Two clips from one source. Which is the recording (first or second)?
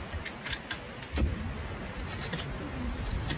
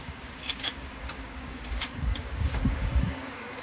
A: first